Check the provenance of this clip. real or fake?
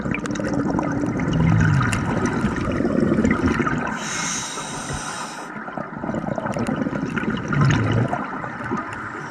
real